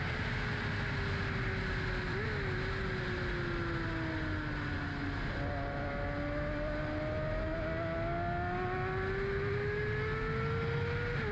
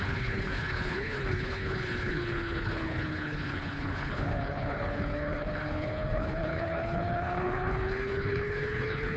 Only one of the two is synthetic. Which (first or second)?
second